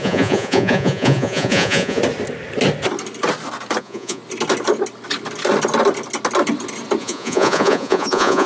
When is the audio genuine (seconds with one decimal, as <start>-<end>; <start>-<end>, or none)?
2.0-3.8; 4.2-7.0